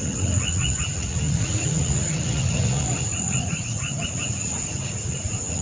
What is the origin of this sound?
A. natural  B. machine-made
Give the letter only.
B